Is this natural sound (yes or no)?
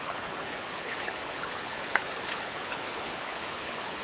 no